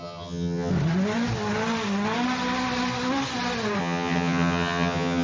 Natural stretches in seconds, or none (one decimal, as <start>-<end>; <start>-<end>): 0.7-3.8